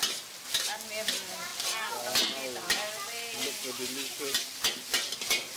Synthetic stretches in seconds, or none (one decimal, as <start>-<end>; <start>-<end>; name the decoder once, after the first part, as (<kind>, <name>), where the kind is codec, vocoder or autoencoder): none